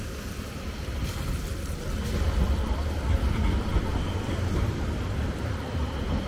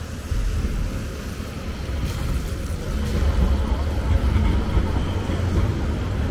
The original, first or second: second